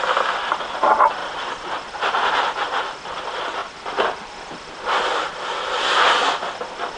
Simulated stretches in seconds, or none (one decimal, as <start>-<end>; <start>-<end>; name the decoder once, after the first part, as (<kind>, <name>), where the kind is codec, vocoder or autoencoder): none